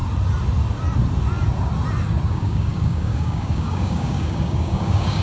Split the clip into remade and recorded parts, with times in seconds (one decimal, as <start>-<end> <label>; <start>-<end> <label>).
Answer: 0.0-2.3 recorded; 2.3-5.2 remade